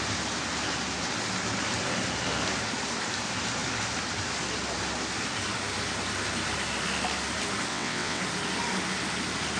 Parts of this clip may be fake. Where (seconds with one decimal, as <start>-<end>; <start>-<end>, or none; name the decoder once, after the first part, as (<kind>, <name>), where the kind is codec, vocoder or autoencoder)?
7.7-8.2 (vocoder, WaveNeXt)